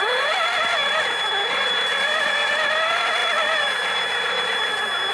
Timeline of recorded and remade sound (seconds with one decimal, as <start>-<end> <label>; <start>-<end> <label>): 0.0-5.1 recorded